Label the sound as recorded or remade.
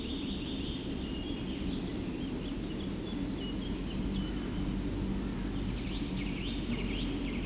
recorded